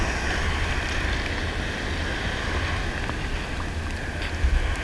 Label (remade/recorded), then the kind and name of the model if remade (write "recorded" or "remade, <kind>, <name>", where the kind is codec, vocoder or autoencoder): recorded